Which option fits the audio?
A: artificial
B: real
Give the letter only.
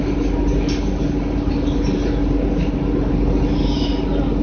B